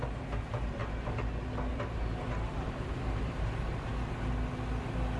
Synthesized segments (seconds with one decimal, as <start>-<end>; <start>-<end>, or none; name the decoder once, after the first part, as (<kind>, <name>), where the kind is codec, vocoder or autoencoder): 0.0-0.8 (vocoder, BigVGAN v2); 1.7-3.9; 4.8-5.2